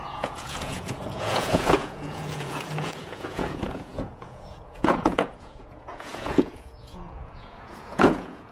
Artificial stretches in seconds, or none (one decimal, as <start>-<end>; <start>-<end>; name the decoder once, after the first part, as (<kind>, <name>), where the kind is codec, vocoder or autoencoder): 0.0-8.5 (vocoder, Vocos)